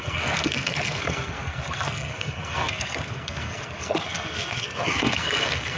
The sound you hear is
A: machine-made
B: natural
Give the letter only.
A